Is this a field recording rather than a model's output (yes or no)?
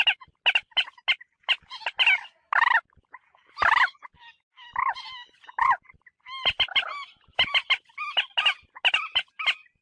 yes